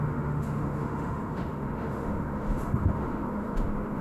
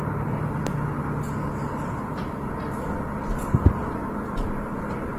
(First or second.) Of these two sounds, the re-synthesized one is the first